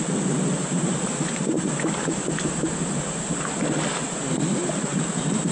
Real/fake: real